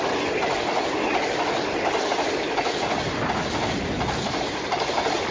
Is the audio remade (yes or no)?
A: no